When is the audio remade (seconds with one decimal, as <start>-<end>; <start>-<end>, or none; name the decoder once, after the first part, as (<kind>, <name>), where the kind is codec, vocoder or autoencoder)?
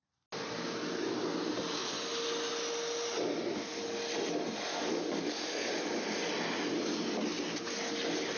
4.7-5.7 (codec, DAC)